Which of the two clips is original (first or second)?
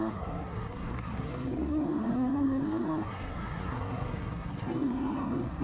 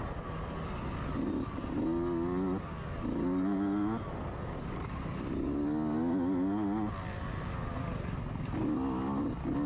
second